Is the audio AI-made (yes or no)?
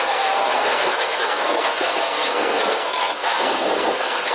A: yes